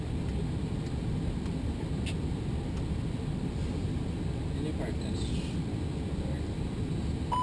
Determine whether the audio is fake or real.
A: real